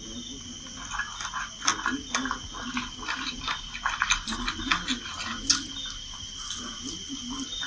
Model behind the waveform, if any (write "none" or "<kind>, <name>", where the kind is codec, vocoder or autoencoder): none